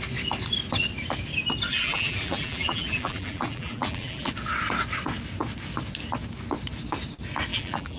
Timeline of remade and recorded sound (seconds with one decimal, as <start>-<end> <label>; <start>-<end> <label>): 0.0-1.7 recorded; 1.7-4.3 remade; 4.3-7.5 recorded; 7.5-8.0 remade